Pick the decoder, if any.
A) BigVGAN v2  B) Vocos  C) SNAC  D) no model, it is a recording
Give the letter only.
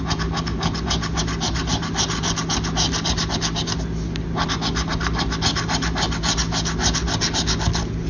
D